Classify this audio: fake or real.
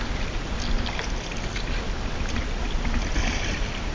real